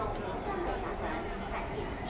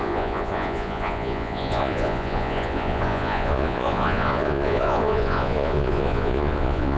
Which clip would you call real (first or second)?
first